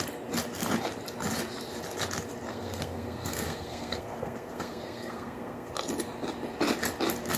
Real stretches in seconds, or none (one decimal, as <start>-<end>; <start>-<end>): 0.0-2.5; 5.7-7.4